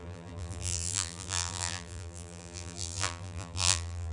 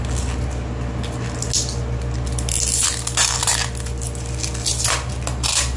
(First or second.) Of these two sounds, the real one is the second